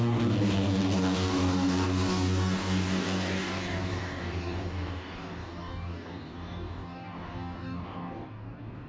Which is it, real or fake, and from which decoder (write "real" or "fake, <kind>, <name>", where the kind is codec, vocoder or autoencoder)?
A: fake, codec, DAC